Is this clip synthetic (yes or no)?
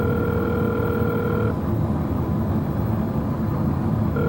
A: no